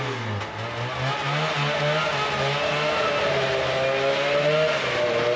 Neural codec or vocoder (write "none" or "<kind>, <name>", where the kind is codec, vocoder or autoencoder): none